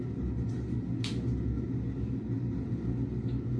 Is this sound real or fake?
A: real